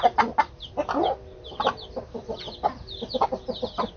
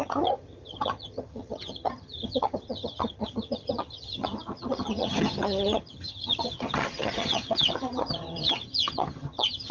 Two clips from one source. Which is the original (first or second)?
first